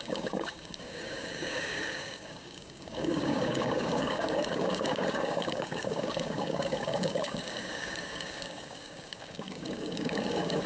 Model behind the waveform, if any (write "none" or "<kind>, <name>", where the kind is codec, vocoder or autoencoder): codec, DAC